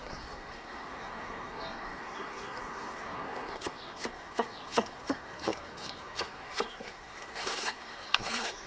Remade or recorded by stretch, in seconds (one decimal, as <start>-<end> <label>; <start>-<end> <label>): 0.0-8.7 remade